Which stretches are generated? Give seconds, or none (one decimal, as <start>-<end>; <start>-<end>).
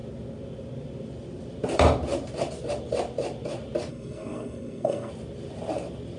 3.9-5.1